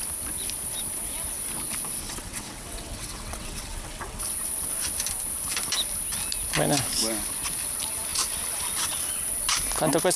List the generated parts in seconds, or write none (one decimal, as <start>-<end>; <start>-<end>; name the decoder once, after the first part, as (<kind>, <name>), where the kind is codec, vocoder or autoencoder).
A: 2.0-4.2 (vocoder, WaveNeXt)